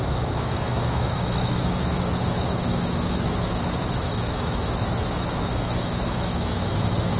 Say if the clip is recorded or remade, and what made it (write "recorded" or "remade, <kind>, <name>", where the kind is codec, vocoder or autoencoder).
remade, autoencoder, DAC-VAE